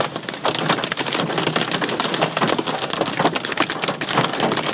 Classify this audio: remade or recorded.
recorded